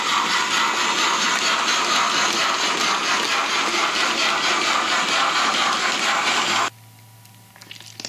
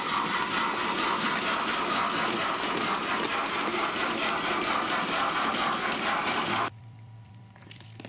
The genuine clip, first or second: first